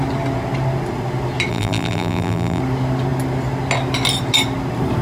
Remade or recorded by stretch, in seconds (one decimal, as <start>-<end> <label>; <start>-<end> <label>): 0.0-1.5 recorded; 1.5-2.6 remade; 2.6-5.0 recorded